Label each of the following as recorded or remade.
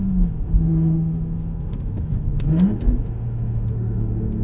remade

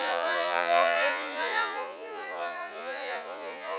remade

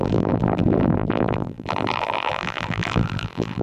remade